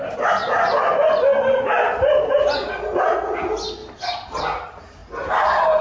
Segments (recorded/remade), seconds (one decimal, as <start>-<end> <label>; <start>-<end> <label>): 0.0-5.8 recorded